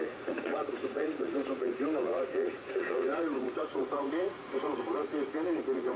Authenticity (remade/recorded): remade